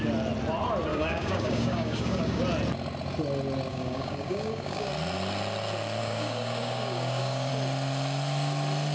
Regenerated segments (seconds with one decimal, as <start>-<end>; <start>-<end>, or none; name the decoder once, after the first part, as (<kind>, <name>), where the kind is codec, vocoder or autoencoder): 0.9-2.4 (codec, DAC); 3.7-4.9; 6.0-7.5